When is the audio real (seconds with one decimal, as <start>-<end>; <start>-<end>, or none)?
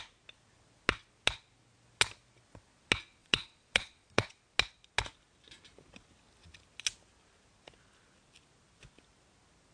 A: 0.0-3.2; 4.4-9.7